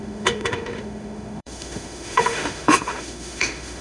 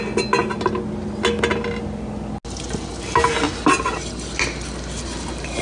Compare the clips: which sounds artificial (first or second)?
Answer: first